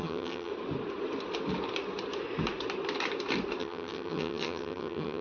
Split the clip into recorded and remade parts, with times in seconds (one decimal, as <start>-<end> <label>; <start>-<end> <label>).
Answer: 0.0-0.5 remade; 0.5-3.6 recorded; 3.6-5.2 remade

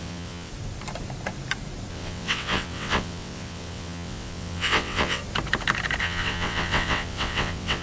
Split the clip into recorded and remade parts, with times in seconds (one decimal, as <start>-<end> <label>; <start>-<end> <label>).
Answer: 0.0-0.5 remade; 0.5-1.9 recorded; 1.9-5.2 remade; 5.2-6.0 recorded; 6.0-7.8 remade